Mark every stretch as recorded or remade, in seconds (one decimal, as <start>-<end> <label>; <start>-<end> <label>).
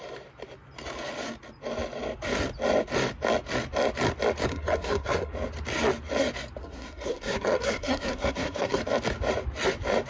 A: 0.0-4.5 recorded; 4.5-5.3 remade; 5.3-6.6 recorded; 6.6-8.8 remade; 8.8-10.1 recorded